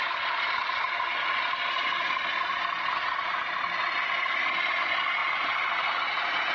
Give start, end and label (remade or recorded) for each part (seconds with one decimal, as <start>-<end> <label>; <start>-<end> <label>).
0.0-5.2 recorded; 5.2-6.5 remade